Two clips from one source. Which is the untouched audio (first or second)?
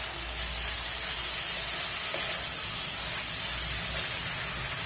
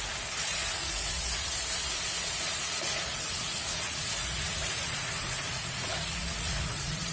first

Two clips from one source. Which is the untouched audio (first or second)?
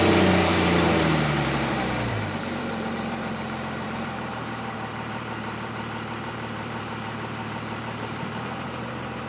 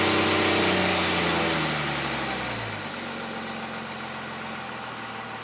second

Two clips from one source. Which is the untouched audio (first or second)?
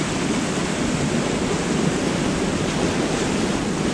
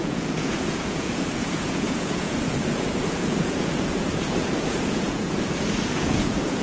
first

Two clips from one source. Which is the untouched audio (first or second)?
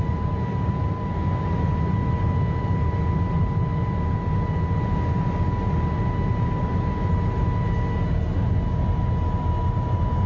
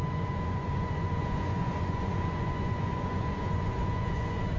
first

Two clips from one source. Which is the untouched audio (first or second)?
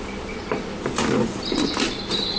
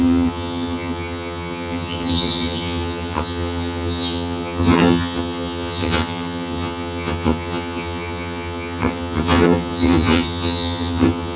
first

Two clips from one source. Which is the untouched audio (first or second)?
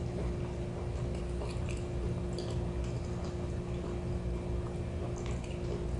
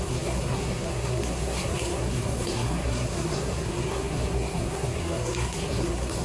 first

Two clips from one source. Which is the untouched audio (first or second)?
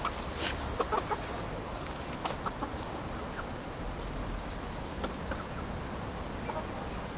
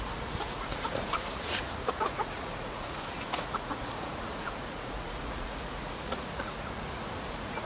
first